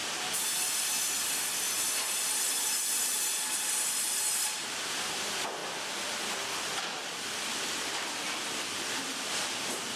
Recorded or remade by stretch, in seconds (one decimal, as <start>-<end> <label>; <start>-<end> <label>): 0.0-5.6 remade; 5.6-7.2 recorded; 7.2-10.0 remade